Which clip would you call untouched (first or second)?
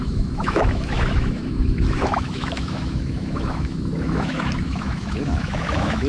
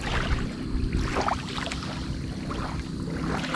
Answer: second